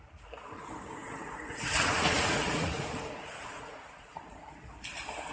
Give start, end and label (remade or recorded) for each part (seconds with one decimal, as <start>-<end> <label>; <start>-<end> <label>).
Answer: 0.0-1.0 recorded; 1.0-4.2 remade; 4.2-5.3 recorded